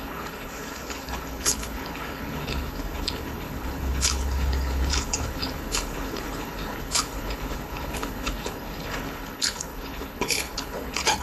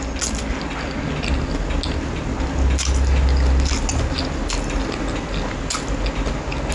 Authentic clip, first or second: second